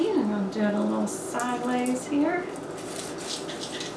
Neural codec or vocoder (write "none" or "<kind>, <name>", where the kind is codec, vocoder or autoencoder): none